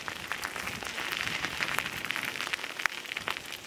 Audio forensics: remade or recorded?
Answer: recorded